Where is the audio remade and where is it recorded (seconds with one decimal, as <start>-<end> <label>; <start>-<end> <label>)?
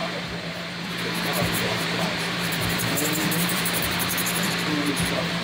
0.0-0.7 remade; 0.7-1.3 recorded; 1.3-4.5 remade; 4.5-5.4 recorded